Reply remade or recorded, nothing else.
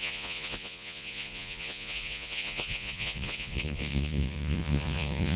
remade